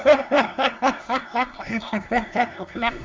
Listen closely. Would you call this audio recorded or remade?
remade